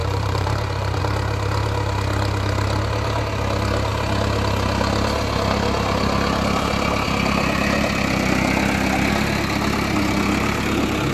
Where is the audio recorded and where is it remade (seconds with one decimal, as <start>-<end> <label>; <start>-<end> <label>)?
0.0-1.0 remade; 1.0-11.1 recorded